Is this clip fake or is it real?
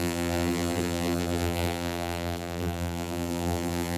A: fake